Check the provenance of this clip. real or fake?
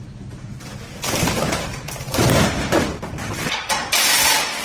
fake